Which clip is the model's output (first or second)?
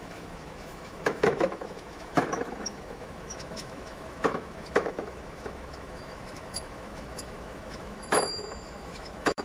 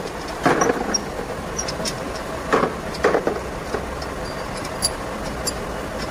first